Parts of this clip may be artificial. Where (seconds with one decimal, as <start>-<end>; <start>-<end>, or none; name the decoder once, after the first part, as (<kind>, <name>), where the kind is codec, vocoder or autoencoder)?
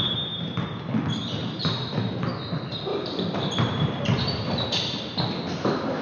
1.4-2.3 (vocoder, BigVGAN v2); 2.9-5.0